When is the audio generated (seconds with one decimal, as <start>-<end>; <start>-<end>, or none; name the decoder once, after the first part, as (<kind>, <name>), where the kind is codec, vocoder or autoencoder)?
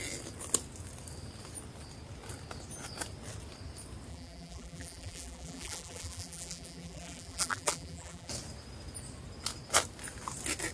4.1-8.3 (vocoder, BigVGAN v2)